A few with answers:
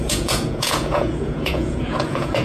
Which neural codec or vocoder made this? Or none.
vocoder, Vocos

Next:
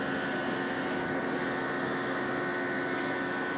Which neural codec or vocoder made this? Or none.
none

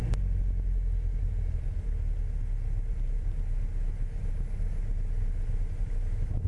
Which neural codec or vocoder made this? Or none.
none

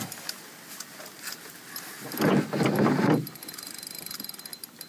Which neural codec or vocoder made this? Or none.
none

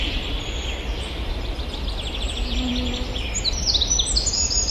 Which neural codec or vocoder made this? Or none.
none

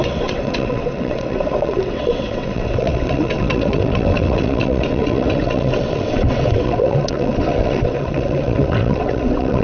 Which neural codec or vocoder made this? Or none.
vocoder, WaveNeXt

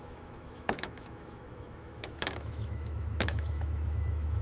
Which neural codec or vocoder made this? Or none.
autoencoder, DAC-VAE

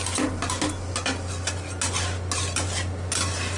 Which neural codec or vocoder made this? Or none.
none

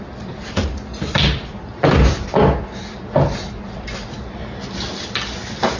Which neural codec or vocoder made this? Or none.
none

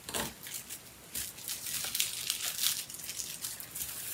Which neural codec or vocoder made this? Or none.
none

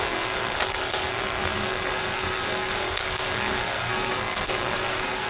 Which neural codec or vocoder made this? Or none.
codec, SNAC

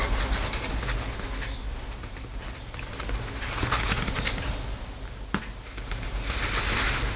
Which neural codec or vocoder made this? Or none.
none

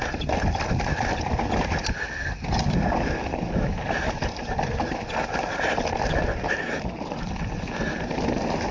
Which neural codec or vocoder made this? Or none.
none